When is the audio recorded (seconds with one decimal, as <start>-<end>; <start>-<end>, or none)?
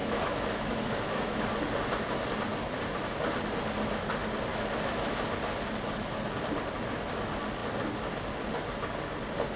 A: 1.5-4.5; 5.2-9.6